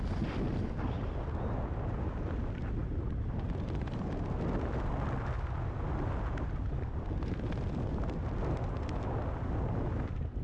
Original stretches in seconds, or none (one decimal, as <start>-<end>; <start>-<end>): 0.0-10.4